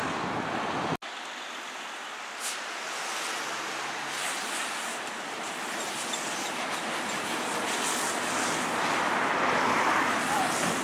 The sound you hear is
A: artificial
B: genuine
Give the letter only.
B